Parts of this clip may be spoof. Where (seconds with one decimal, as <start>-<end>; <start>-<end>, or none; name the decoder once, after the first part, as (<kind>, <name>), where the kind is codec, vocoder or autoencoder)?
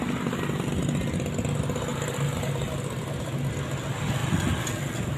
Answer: 1.9-3.0 (vocoder, BigVGAN v2); 4.2-5.2